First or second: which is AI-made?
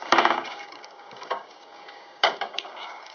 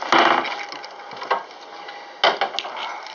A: first